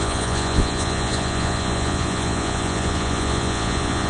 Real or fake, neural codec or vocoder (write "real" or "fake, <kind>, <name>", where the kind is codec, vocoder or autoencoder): fake, vocoder, Vocos